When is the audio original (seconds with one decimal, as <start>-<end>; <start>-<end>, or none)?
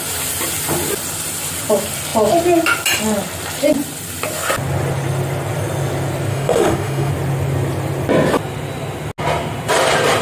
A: 0.0-6.3; 7.1-10.2